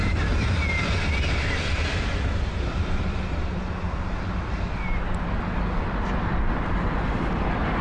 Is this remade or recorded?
recorded